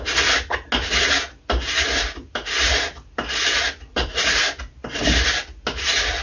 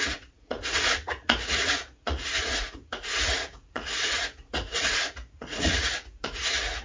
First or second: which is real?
first